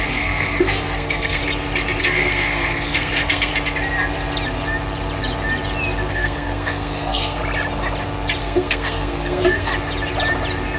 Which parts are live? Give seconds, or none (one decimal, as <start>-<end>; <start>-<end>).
1.4-2.0; 3.5-6.1; 7.4-8.4; 9.7-10.8